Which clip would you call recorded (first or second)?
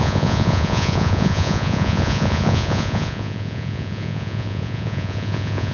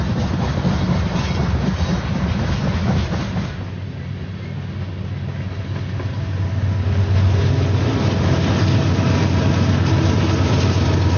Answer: second